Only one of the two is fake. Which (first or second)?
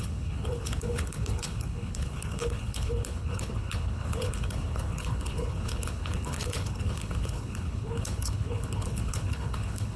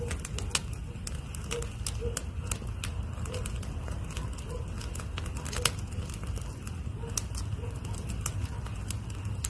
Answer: first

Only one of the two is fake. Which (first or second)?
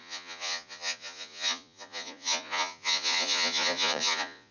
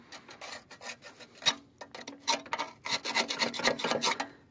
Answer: first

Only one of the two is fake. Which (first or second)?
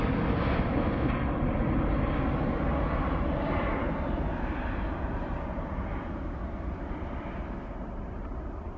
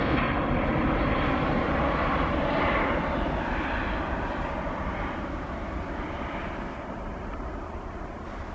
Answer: second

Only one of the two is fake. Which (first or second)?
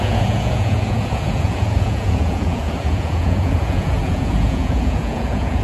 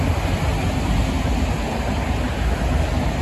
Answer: first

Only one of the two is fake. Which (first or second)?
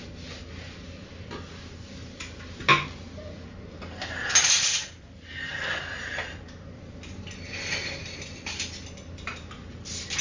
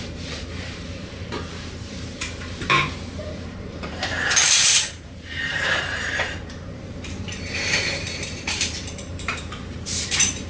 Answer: second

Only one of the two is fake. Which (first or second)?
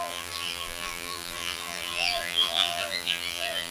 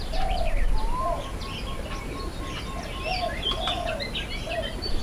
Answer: first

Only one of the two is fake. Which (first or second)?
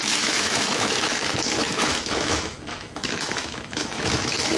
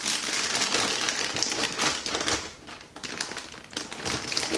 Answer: first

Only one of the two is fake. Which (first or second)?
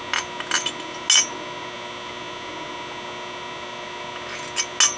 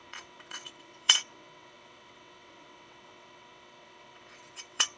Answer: second